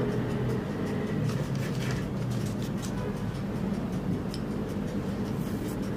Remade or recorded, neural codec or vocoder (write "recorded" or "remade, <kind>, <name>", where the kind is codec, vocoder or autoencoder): recorded